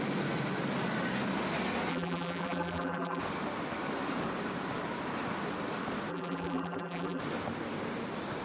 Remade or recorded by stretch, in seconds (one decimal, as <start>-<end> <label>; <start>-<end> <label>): 0.0-1.9 recorded; 1.9-3.2 remade; 3.2-6.1 recorded; 6.1-7.2 remade; 7.2-8.4 recorded